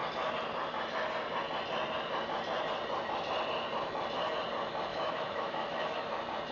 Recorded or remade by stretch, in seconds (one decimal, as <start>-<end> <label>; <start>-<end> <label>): 0.0-4.9 recorded; 4.9-6.1 remade; 6.1-6.5 recorded